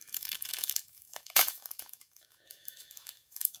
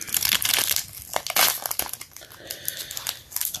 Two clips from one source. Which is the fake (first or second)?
first